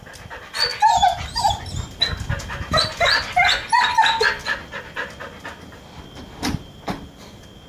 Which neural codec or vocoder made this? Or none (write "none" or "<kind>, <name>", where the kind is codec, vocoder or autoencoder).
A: none